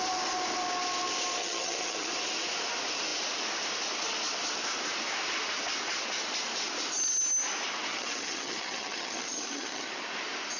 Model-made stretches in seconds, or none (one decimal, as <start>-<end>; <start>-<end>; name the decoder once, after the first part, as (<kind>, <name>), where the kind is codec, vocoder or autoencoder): 1.4-2.1 (vocoder, HiFi-GAN); 7.9-9.9